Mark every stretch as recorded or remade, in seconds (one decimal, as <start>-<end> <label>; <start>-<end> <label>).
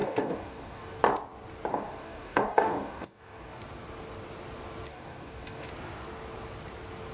0.0-1.0 remade; 1.0-1.7 recorded; 1.7-3.6 remade; 3.6-4.9 recorded; 4.9-5.7 remade; 5.7-7.1 recorded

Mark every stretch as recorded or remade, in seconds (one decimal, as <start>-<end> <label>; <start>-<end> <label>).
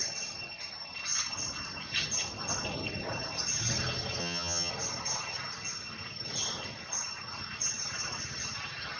0.0-4.2 recorded; 4.2-4.7 remade; 4.7-9.0 recorded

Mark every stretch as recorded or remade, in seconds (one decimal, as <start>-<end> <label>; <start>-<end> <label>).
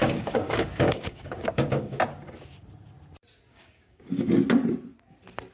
0.0-2.0 remade; 2.0-3.5 recorded; 3.5-4.3 remade; 4.3-5.5 recorded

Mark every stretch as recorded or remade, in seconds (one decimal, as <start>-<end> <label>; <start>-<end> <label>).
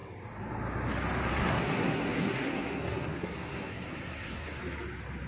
0.0-1.3 recorded; 1.3-4.6 remade; 4.6-5.3 recorded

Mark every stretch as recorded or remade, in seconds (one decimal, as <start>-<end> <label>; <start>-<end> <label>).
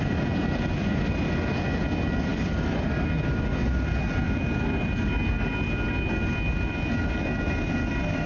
0.0-8.3 recorded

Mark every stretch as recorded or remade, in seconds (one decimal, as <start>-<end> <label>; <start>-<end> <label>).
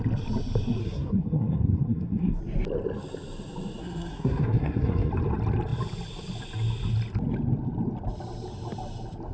0.0-0.8 recorded; 0.8-2.4 remade; 2.4-3.8 recorded; 3.8-5.1 remade; 5.1-9.3 recorded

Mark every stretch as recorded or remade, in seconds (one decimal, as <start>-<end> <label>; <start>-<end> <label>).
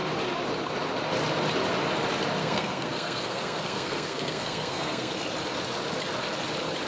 0.0-2.4 recorded; 2.4-5.1 remade; 5.1-6.9 recorded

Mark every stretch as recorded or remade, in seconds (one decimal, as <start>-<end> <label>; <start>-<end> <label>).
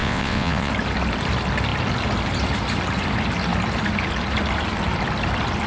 0.0-0.7 remade; 0.7-5.7 recorded